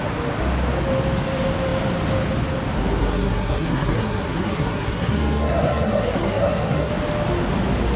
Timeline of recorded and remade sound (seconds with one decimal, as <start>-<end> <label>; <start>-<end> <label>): 0.0-3.0 recorded; 3.0-6.9 remade; 6.9-8.0 recorded